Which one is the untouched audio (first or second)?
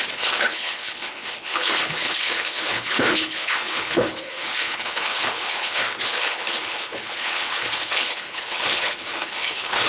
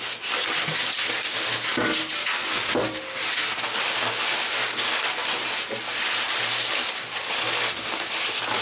second